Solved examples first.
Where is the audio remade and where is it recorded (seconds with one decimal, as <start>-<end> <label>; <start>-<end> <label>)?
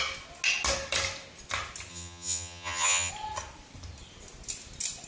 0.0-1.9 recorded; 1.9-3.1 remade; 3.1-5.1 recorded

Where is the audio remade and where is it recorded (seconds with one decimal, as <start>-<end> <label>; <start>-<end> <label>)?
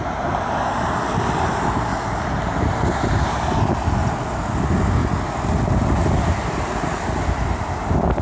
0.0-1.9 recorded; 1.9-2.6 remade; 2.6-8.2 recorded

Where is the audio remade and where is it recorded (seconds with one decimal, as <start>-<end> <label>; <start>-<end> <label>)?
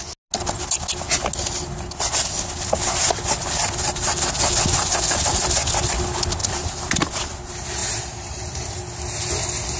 0.0-3.4 recorded; 3.4-4.3 remade; 4.3-4.8 recorded; 4.8-5.4 remade; 5.4-6.4 recorded; 6.4-7.1 remade; 7.1-7.8 recorded; 7.8-8.6 remade; 8.6-9.8 recorded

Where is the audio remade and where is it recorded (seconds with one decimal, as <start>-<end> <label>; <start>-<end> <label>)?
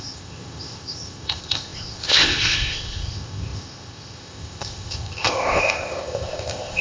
0.0-6.8 remade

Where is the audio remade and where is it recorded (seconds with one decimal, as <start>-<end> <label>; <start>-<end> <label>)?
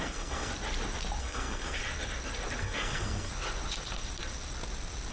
0.0-0.5 remade; 0.5-1.2 recorded; 1.2-1.8 remade; 1.8-2.6 recorded; 2.6-3.3 remade; 3.3-5.1 recorded